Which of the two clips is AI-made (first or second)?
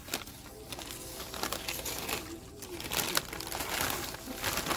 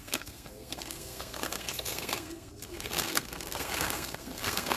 second